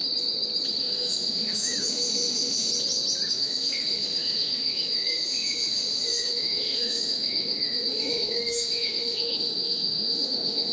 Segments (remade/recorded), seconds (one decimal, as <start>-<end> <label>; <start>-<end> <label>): 0.0-0.8 recorded; 0.8-2.7 remade; 2.7-3.3 recorded; 3.3-10.7 remade